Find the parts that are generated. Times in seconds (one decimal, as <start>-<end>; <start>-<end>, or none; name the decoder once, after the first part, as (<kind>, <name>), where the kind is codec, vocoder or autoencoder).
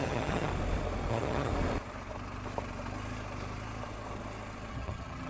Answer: 0.0-0.5 (vocoder, HiFi-GAN); 1.1-1.5; 4.7-5.3